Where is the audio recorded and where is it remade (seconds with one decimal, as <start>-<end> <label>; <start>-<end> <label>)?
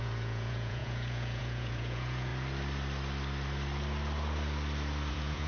0.0-2.3 remade; 2.3-5.1 recorded; 5.1-5.5 remade